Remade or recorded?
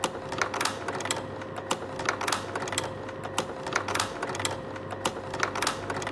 recorded